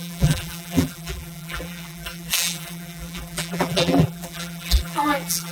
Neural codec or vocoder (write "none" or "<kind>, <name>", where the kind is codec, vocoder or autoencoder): vocoder, BigVGAN v2